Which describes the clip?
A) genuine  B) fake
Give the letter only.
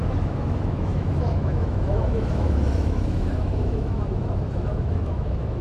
B